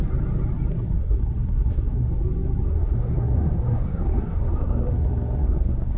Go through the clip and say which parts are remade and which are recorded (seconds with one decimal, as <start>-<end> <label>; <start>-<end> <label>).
0.0-0.7 recorded; 0.7-2.1 remade; 2.1-2.7 recorded; 2.7-6.0 remade